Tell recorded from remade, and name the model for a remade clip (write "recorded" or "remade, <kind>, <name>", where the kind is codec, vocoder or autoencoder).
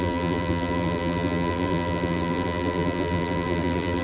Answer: remade, vocoder, BigVGAN v2